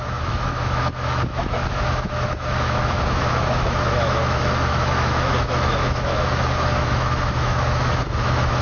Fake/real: fake